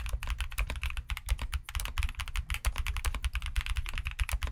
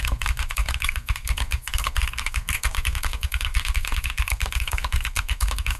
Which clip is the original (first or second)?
first